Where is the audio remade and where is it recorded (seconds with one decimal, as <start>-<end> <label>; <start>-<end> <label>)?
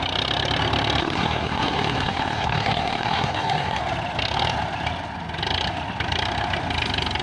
0.0-1.0 recorded; 1.0-3.8 remade; 3.8-7.2 recorded